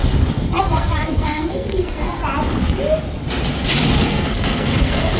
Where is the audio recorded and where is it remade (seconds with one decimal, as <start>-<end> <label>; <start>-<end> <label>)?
0.0-0.6 recorded; 0.6-2.2 remade; 2.2-3.9 recorded; 3.9-5.2 remade